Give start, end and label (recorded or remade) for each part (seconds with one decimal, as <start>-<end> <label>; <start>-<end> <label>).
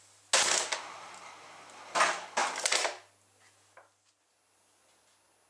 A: 0.0-5.5 recorded